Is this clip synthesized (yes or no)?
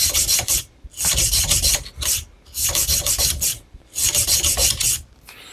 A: no